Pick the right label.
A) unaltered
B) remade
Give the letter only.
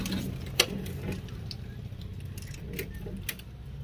A